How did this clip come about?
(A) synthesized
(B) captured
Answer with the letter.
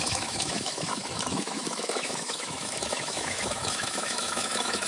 A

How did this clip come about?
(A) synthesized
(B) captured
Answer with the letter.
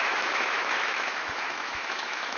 A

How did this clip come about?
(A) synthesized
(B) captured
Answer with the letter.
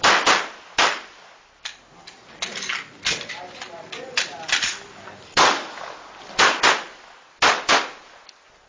B